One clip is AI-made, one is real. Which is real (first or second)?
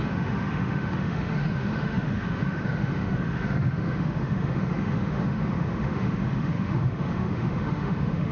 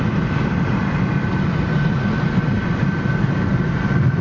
second